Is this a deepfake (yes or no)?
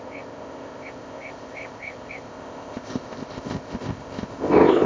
yes